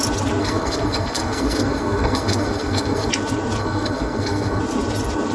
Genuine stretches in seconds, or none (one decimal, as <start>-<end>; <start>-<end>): 0.0-0.4; 3.1-3.6; 4.6-5.3